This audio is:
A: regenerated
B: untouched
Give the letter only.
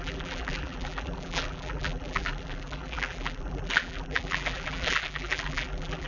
A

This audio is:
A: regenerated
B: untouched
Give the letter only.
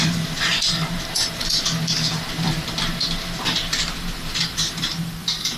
A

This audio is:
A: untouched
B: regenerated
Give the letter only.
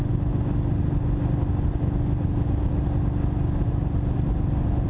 A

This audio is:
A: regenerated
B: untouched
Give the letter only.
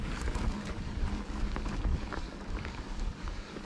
A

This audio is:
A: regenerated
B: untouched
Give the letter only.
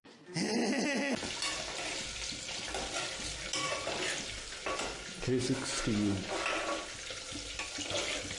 B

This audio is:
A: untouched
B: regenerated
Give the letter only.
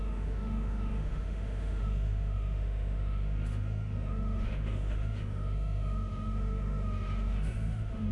B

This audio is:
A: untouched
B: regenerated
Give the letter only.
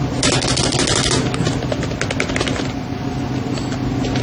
A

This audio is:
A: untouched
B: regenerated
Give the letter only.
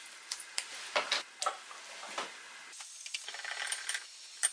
A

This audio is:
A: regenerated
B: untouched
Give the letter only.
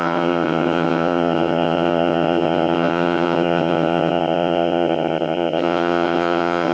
A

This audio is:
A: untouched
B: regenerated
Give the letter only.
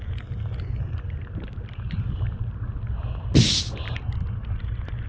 A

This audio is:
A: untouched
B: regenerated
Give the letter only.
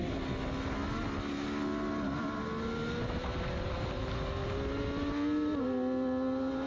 A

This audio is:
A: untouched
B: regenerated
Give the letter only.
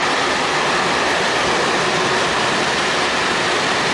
A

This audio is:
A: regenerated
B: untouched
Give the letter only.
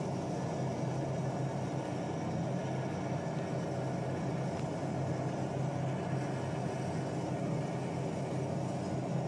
B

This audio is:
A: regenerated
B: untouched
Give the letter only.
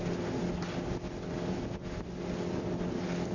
B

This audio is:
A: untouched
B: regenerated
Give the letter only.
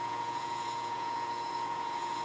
B